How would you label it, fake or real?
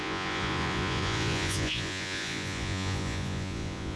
fake